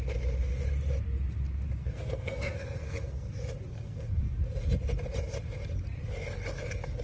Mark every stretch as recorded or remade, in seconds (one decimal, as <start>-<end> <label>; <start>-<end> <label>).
0.0-1.8 recorded; 1.8-3.3 remade; 3.3-3.7 recorded; 3.7-4.2 remade; 4.2-7.0 recorded